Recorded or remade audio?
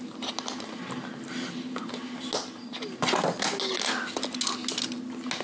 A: recorded